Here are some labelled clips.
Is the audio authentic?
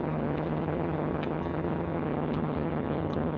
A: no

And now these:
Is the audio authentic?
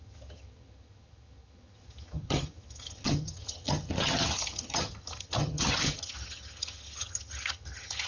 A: no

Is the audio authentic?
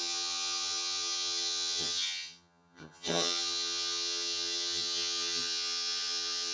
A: no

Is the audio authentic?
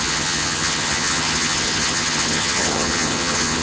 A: no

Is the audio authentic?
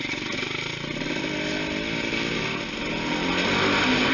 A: yes